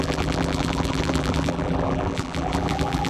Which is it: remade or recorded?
remade